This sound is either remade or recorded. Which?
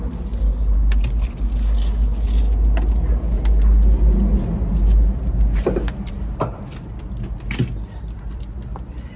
recorded